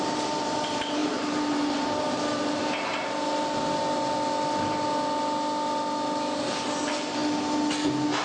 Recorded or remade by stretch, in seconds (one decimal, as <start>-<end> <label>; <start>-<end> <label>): 0.0-2.6 remade; 2.6-6.8 recorded; 6.8-7.2 remade; 7.2-8.2 recorded